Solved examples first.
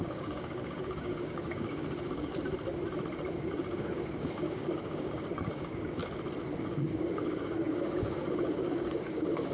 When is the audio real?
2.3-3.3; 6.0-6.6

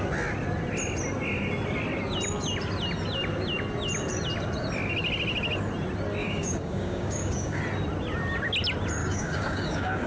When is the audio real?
0.0-6.2; 7.6-9.0

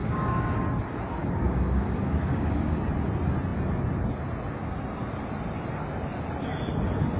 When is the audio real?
0.6-1.2; 2.8-7.2